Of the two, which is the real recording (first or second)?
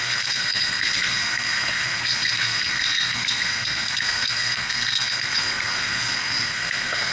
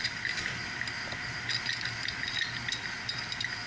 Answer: second